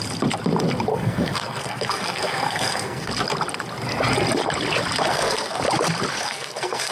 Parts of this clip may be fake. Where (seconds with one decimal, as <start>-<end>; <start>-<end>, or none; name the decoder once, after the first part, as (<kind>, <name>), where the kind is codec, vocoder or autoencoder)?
0.9-3.1 (codec, SNAC); 5.1-5.6; 6.1-6.9